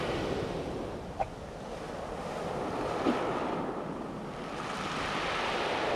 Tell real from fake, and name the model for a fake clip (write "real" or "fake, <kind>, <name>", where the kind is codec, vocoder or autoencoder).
real